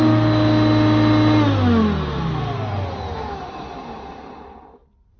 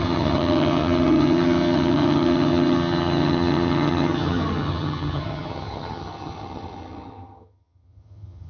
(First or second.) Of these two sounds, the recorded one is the first